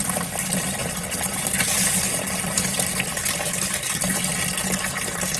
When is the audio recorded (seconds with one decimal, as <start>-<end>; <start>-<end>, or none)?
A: 4.3-4.9